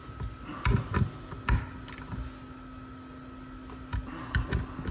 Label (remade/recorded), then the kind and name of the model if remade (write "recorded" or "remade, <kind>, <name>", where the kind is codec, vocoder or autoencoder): recorded